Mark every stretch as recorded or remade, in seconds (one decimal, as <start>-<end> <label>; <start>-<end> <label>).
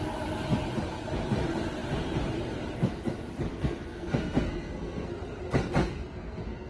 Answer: 0.0-3.5 recorded; 3.5-5.2 remade; 5.2-5.8 recorded; 5.8-6.7 remade